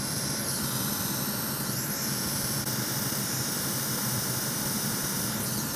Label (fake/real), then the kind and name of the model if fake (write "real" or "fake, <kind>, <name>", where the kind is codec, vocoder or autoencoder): fake, vocoder, BigVGAN v2